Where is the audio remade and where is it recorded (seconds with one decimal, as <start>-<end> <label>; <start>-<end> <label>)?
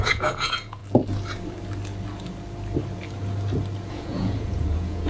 0.0-0.8 remade; 0.8-3.9 recorded; 3.9-5.1 remade